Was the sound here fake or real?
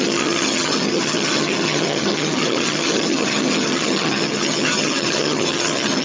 fake